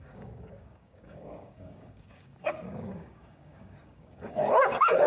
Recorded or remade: remade